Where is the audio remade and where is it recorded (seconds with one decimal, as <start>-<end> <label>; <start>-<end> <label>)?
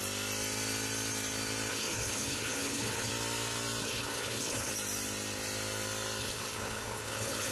0.0-1.7 recorded; 1.7-3.1 remade; 3.1-3.8 recorded; 3.8-4.7 remade; 4.7-6.2 recorded; 6.2-7.5 remade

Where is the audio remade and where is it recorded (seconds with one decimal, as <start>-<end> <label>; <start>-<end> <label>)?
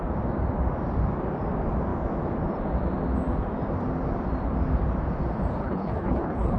0.0-5.6 recorded; 5.6-6.6 remade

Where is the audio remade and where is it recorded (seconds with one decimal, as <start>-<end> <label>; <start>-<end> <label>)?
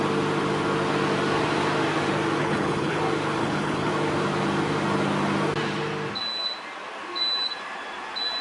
0.0-2.4 recorded; 2.4-3.0 remade; 3.0-3.4 recorded; 3.4-3.9 remade; 3.9-8.4 recorded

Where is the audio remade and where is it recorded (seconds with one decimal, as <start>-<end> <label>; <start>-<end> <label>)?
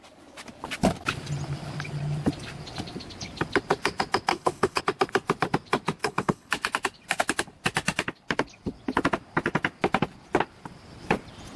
0.0-4.3 recorded; 4.3-4.8 remade; 4.8-6.0 recorded; 6.0-6.5 remade; 6.5-11.6 recorded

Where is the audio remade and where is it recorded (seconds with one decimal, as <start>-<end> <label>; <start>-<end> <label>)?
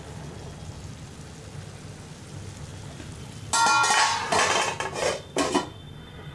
0.0-6.3 recorded